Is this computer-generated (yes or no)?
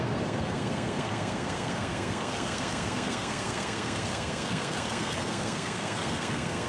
yes